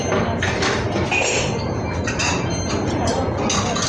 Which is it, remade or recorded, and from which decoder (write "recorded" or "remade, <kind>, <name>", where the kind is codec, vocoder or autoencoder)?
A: recorded